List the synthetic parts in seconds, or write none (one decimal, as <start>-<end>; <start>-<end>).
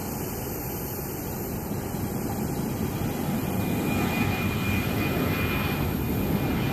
0.0-6.7